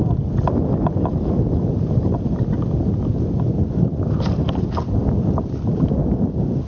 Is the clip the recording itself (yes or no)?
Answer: yes